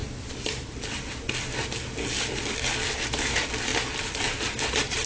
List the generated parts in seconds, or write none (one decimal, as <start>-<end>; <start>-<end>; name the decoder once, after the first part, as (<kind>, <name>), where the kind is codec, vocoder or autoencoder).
none